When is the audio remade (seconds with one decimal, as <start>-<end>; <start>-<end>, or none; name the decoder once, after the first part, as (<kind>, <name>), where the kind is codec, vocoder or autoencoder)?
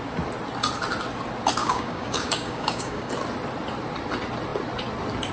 1.6-3.1 (codec, DAC)